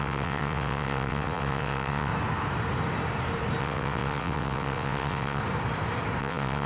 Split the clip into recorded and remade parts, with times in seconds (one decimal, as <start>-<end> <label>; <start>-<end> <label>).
0.0-2.1 remade; 2.1-3.6 recorded; 3.6-5.4 remade; 5.4-6.2 recorded; 6.2-6.7 remade